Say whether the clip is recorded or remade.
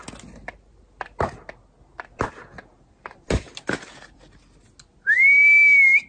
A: recorded